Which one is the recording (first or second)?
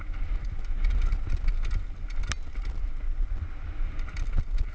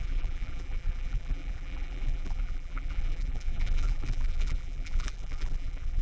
first